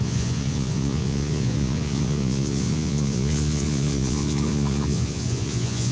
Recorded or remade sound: remade